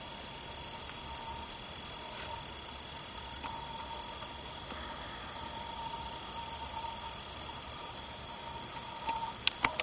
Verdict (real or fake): real